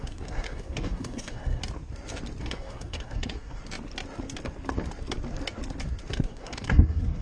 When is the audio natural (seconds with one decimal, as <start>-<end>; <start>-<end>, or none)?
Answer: 1.6-2.4; 3.6-6.1